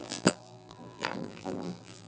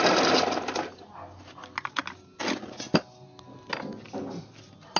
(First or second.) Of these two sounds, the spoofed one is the first